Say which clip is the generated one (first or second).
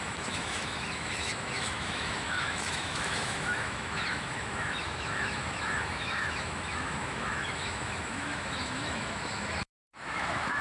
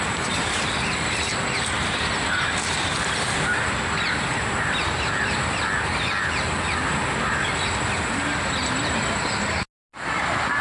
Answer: first